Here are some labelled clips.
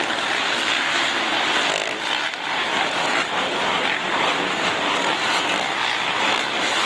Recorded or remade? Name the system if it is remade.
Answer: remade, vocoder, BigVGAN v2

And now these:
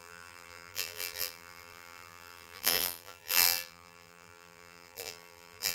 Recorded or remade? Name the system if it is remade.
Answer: remade, vocoder, BigVGAN v2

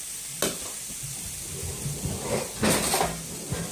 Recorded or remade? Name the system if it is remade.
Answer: recorded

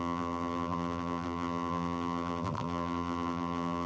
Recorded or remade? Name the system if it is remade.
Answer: remade, vocoder, BigVGAN v2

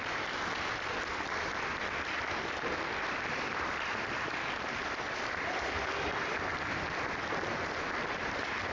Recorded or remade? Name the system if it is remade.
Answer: remade, vocoder, BigVGAN v2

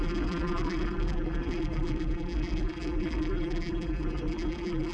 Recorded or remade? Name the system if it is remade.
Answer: remade, vocoder, BigVGAN v2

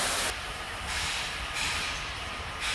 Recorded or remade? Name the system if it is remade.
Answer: remade, vocoder, BigVGAN v2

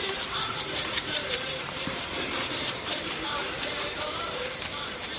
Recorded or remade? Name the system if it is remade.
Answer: remade, vocoder, BigVGAN v2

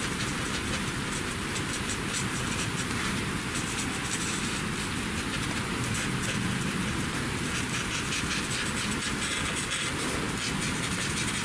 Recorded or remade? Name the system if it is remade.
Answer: recorded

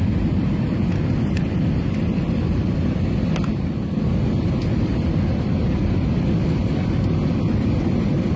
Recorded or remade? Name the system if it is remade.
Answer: remade, vocoder, BigVGAN v2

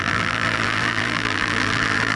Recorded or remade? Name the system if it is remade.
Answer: remade, vocoder, BigVGAN v2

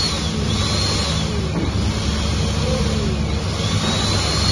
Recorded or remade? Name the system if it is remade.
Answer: recorded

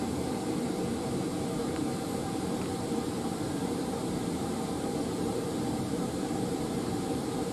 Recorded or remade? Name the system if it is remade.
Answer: remade, vocoder, BigVGAN v2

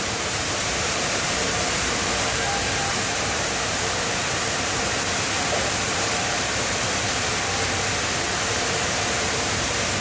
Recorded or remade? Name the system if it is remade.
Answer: remade, vocoder, BigVGAN v2